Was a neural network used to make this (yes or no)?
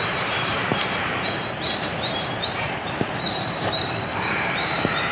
yes